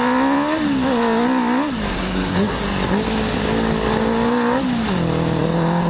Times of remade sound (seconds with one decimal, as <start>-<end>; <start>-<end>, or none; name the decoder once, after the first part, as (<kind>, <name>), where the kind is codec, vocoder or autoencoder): 1.9-2.6 (codec, SNAC)